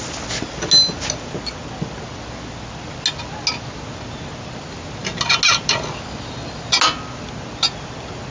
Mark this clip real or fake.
real